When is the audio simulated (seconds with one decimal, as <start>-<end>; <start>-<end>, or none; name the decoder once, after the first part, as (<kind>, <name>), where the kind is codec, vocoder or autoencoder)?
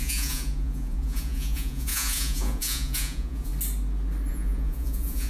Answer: 0.0-3.5 (vocoder, Vocos); 4.3-5.3